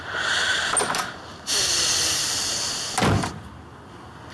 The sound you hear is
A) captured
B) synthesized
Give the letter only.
A